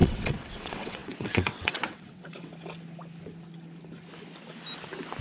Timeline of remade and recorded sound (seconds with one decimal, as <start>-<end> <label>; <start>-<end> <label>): 0.0-2.5 remade; 2.5-5.2 recorded